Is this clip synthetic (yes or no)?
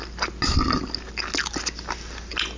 no